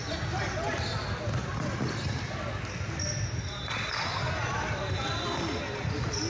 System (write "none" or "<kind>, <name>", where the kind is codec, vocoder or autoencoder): none